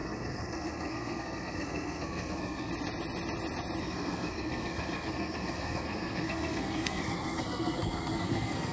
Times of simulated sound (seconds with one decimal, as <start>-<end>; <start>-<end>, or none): 0.0-2.7; 3.8-8.7